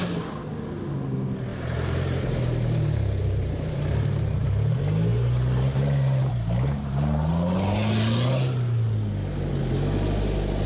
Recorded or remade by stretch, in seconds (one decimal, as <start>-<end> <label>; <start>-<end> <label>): 0.0-1.5 recorded; 1.5-4.4 remade; 4.4-5.1 recorded; 5.1-7.3 remade; 7.3-10.7 recorded